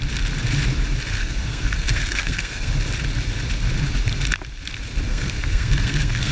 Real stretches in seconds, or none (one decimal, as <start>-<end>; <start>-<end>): 0.0-1.2; 2.7-5.1